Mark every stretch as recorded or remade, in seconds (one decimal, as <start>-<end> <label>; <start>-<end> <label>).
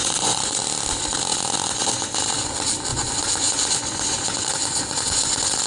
0.0-0.6 remade; 0.6-1.3 recorded; 1.3-2.3 remade; 2.3-2.9 recorded; 2.9-5.7 remade